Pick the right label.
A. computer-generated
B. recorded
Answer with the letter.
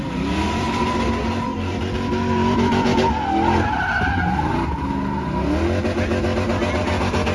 B